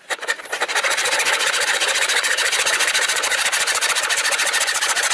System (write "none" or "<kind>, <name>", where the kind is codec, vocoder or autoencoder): vocoder, Vocos